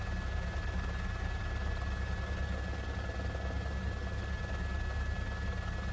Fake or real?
real